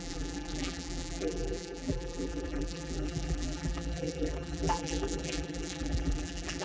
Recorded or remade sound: remade